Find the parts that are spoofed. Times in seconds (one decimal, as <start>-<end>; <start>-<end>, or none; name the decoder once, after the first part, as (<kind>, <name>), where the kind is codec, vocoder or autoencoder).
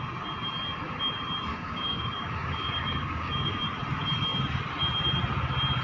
1.5-3.6 (codec, DAC)